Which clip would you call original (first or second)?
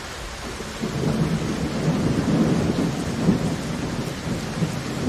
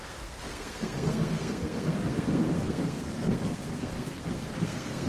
first